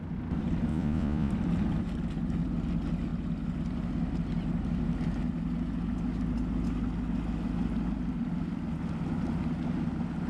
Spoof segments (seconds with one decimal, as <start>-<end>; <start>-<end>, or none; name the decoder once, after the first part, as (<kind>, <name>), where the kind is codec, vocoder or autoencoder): 0.7-1.3 (vocoder, Vocos)